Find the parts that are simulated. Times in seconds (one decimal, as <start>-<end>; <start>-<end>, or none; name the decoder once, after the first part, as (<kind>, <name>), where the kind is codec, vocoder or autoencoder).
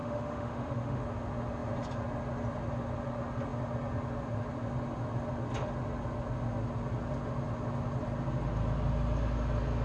0.0-1.0 (autoencoder, DAC-VAE)